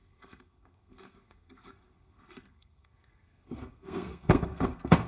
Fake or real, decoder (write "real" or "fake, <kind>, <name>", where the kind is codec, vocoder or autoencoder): fake, codec, SNAC